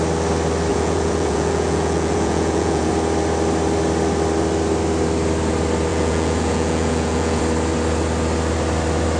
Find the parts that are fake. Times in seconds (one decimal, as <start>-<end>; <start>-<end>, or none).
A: 0.7-2.9; 5.9-7.4

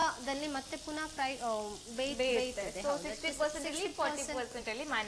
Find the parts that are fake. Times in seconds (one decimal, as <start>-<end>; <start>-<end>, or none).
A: none

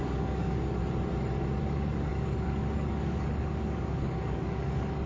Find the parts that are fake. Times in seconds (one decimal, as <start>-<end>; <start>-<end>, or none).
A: 0.0-0.8; 1.6-5.1